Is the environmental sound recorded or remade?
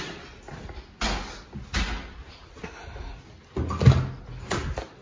recorded